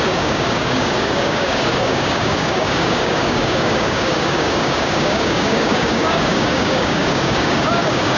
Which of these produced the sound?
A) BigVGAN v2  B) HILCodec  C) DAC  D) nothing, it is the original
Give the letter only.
C